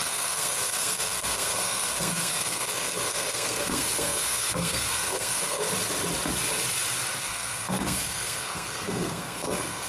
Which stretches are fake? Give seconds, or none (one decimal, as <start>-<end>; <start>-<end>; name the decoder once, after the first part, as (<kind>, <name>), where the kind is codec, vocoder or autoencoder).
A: 0.0-5.6 (codec, SNAC); 7.2-9.9